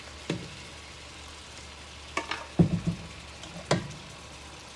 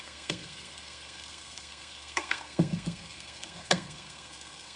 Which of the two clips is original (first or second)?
first